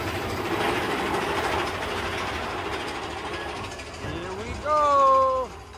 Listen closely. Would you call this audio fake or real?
real